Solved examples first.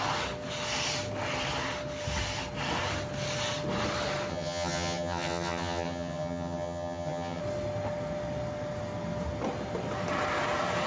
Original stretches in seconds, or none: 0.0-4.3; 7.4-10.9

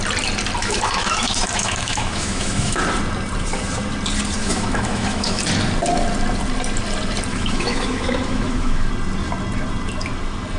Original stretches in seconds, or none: 0.0-0.6; 2.8-4.4; 5.4-7.3; 8.9-10.6

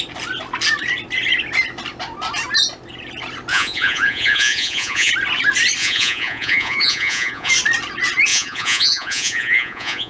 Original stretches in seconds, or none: 0.0-3.5; 5.1-5.8; 7.5-8.3

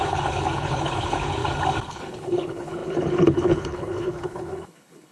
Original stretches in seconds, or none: 1.4-1.9

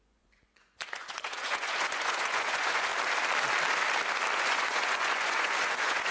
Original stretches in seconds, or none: 2.9-4.4

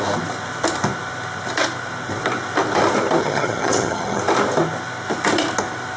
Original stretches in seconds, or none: 0.0-3.2; 4.2-6.0

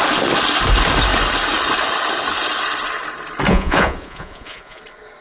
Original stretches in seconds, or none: 0.0-3.5; 4.8-5.2